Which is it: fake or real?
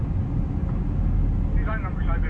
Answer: real